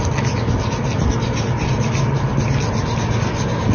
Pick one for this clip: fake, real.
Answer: real